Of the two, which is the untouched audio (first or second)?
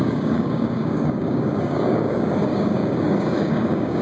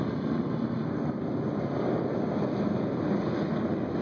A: second